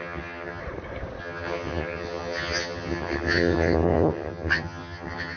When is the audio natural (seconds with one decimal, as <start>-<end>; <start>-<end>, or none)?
0.6-1.2